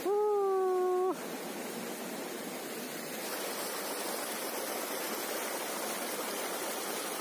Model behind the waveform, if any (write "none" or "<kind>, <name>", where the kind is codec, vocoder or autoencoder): none